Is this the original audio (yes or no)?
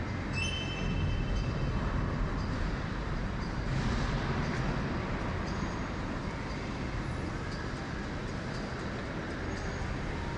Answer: yes